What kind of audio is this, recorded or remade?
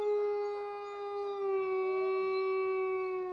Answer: recorded